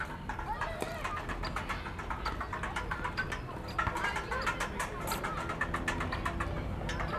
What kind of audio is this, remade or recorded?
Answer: recorded